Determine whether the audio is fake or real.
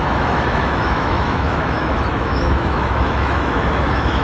fake